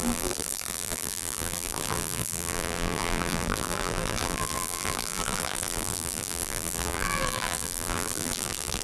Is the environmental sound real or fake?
fake